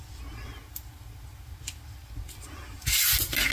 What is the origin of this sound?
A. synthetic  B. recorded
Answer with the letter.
B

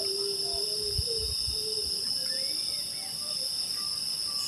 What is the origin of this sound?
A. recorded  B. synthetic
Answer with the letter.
A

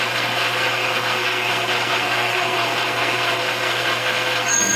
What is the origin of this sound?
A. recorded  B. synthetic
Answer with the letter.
B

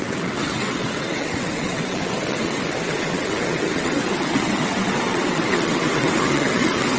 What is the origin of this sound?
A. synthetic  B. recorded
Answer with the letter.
A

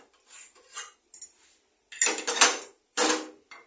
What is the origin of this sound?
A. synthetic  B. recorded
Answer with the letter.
B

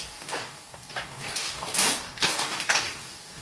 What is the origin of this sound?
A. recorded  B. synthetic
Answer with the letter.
B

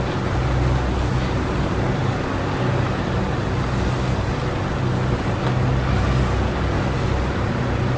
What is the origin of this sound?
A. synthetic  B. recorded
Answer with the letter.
B